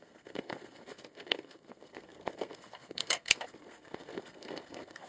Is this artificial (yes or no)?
yes